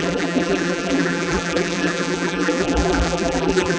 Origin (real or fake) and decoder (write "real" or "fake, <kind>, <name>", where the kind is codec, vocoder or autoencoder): fake, vocoder, BigVGAN v2